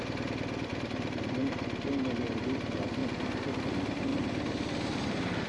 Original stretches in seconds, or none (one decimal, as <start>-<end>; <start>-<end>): 3.0-3.6; 4.1-5.1